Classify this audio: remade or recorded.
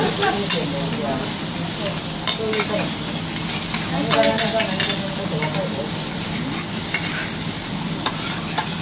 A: recorded